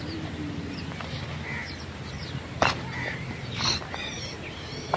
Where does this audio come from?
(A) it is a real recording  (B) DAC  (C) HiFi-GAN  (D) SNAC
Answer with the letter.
A